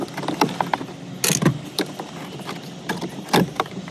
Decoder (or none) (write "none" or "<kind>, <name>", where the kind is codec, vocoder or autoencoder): none